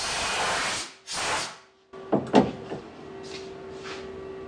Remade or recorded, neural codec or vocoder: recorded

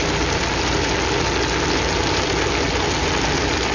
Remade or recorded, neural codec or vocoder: recorded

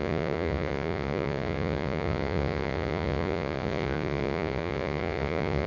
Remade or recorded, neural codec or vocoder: remade, vocoder, Vocos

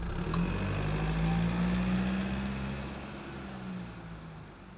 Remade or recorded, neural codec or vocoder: recorded